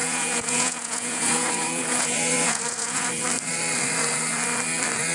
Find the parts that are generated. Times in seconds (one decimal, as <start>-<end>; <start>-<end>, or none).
0.0-3.1